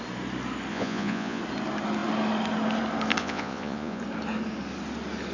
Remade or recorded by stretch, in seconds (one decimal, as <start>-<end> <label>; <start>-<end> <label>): 0.0-0.7 recorded; 0.7-1.4 remade; 1.4-3.2 recorded; 3.2-4.0 remade; 4.0-5.3 recorded